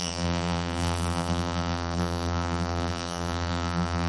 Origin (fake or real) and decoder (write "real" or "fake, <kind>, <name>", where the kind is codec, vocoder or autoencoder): fake, vocoder, BigVGAN v2